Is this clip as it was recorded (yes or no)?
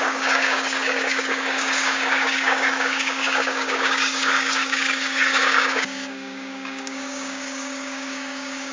no